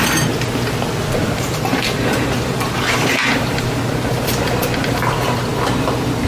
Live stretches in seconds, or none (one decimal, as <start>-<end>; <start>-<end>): 0.0-1.2; 3.9-6.3